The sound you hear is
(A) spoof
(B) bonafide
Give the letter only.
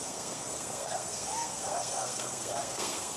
A